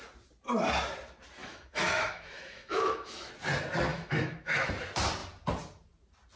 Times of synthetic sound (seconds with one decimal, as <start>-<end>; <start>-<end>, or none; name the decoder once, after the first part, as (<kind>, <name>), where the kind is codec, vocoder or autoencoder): 1.4-3.3 (autoencoder, DAC-VAE); 3.9-4.7